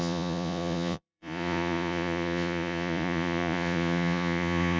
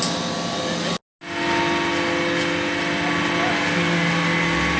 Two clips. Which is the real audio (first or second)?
second